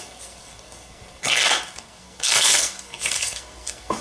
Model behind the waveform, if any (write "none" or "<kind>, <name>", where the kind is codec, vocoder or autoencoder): codec, SNAC